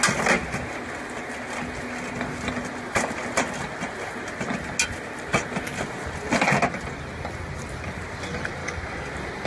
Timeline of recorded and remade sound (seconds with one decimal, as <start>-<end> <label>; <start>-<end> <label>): 0.0-8.6 recorded; 8.6-9.1 remade; 9.1-9.5 recorded

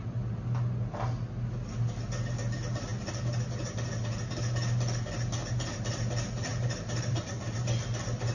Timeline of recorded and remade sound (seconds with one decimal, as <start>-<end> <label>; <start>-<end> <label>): 0.0-6.5 recorded; 6.5-7.2 remade; 7.2-8.3 recorded

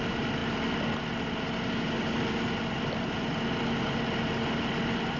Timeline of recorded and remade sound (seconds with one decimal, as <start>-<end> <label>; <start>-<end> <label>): 0.0-5.2 recorded

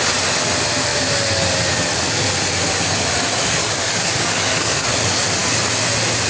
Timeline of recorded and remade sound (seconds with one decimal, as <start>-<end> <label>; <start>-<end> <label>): 0.0-3.6 recorded; 3.6-4.9 remade; 4.9-6.3 recorded

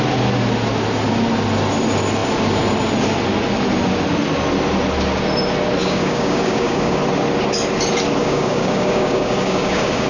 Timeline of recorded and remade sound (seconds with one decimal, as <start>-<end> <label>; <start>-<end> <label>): 0.0-5.8 recorded; 5.8-7.0 remade; 7.0-8.2 recorded; 8.2-10.1 remade

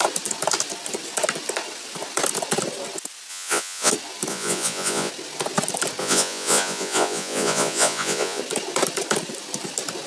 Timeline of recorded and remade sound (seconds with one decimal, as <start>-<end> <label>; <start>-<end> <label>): 0.0-3.3 recorded; 3.3-3.9 remade; 3.9-4.3 recorded; 4.3-5.1 remade; 5.1-6.0 recorded; 6.0-8.4 remade; 8.4-10.1 recorded